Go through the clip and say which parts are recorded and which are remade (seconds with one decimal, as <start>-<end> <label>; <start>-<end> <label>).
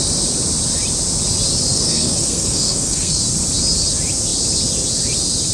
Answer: 0.0-1.7 recorded; 1.7-3.2 remade; 3.2-5.5 recorded